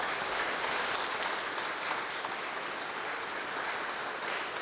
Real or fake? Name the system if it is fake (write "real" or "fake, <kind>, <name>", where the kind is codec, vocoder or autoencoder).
real